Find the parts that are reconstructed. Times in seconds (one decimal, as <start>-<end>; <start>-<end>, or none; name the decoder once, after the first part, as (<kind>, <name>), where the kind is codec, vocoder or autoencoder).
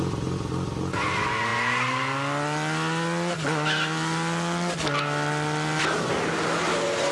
none